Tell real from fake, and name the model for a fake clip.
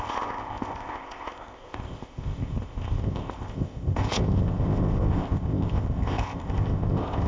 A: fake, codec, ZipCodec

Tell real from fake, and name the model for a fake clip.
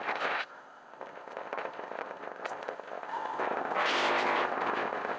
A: fake, codec, ZipCodec